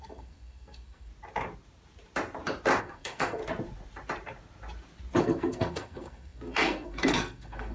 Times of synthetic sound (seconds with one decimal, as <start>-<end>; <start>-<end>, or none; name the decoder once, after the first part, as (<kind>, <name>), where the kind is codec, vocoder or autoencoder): 0.0-1.1 (codec, SNAC); 2.8-3.4; 5.2-7.7